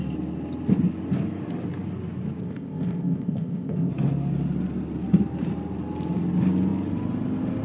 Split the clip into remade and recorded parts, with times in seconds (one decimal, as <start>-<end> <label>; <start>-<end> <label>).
0.0-2.4 recorded; 2.4-3.9 remade; 3.9-7.6 recorded